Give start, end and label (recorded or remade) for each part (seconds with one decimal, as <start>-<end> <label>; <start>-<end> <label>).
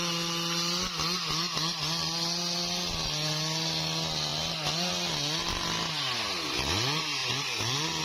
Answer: 0.0-8.0 recorded